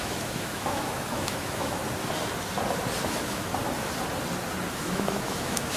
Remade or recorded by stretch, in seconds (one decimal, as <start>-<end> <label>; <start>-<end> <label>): 0.0-1.8 remade; 1.8-3.1 recorded; 3.1-3.5 remade; 3.5-4.7 recorded; 4.7-5.8 remade